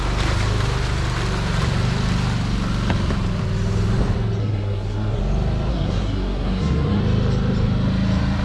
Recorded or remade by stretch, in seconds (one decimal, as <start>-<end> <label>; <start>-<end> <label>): 0.0-4.4 recorded; 4.4-5.2 remade; 5.2-5.7 recorded; 5.7-7.0 remade; 7.0-8.4 recorded